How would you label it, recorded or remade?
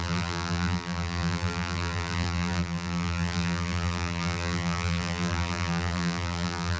remade